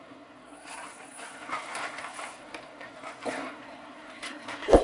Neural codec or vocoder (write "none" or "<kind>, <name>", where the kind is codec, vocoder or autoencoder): codec, SNAC